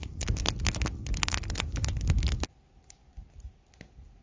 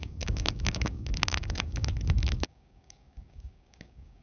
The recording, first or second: first